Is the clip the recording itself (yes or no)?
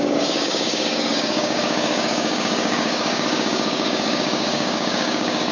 no